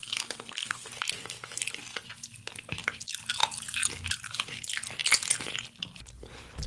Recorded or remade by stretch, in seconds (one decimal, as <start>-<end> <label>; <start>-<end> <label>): 0.0-0.9 remade; 0.9-6.7 recorded

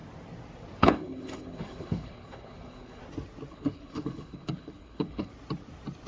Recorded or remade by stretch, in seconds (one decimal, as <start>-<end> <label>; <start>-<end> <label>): 0.0-0.8 recorded; 0.8-3.0 remade; 3.0-3.5 recorded; 3.5-5.3 remade; 5.3-6.1 recorded

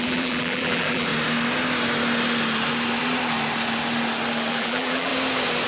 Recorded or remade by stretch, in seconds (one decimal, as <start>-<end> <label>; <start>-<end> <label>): 0.0-1.1 remade; 1.1-4.5 recorded; 4.5-5.1 remade; 5.1-5.7 recorded

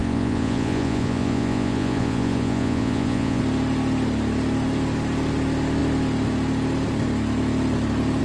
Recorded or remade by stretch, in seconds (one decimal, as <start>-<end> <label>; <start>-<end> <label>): 0.0-3.4 remade; 3.4-8.2 recorded

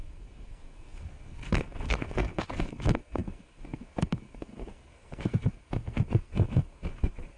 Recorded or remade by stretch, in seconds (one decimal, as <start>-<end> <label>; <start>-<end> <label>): 0.0-7.4 remade

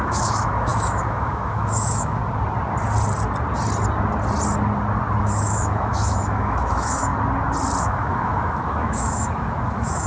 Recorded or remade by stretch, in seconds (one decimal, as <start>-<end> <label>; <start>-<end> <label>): 0.0-2.2 remade; 2.2-5.2 recorded; 5.2-7.1 remade; 7.1-7.8 recorded; 7.8-10.1 remade